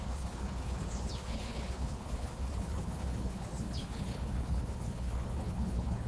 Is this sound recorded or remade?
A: remade